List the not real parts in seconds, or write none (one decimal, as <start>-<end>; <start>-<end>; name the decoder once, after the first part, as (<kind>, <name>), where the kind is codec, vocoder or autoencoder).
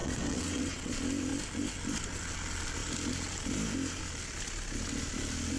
0.0-0.9 (vocoder, WaveNeXt)